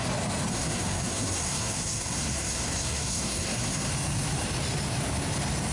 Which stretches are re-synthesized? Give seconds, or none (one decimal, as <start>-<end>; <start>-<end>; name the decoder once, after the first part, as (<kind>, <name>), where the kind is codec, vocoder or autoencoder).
0.5-3.9 (codec, SNAC)